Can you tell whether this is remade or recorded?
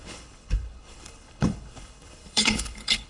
remade